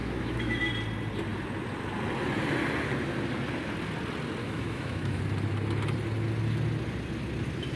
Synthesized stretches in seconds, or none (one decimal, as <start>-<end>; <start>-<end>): 0.0-0.7; 4.4-5.2